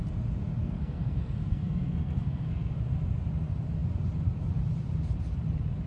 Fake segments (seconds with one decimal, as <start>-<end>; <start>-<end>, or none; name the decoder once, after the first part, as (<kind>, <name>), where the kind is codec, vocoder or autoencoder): 0.6-2.7 (codec, SNAC)